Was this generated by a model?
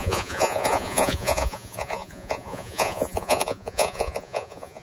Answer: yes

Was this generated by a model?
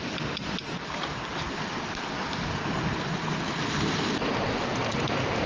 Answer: no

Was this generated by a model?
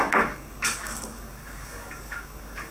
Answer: yes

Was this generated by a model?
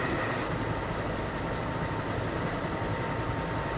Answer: no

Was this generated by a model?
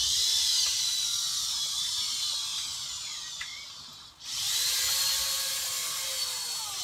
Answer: no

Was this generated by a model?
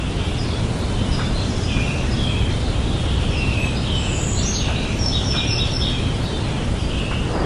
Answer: no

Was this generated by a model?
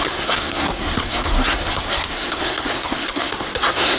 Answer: yes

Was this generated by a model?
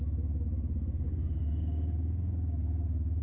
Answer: no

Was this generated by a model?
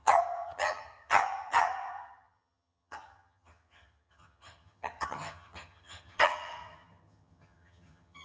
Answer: yes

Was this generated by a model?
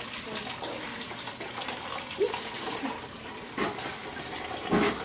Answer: no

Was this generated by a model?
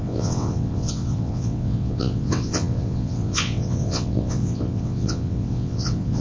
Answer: yes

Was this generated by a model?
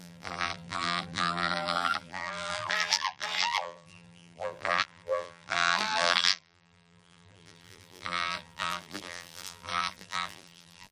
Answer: yes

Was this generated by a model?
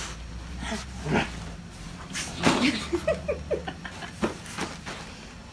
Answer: no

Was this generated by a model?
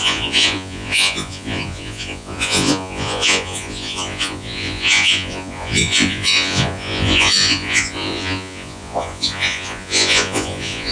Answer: yes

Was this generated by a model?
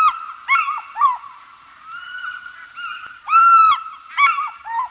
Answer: yes